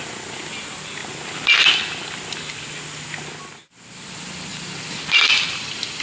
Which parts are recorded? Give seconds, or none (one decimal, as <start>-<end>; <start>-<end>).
1.0-3.6